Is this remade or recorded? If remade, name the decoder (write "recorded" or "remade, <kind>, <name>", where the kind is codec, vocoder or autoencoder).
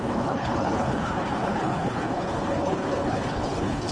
remade, codec, HILCodec